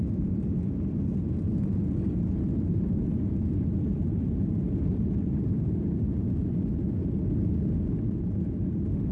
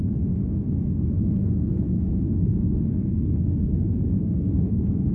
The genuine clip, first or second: first